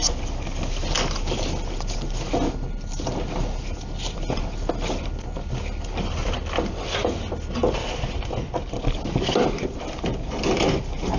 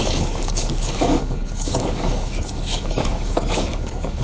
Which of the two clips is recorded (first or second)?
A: first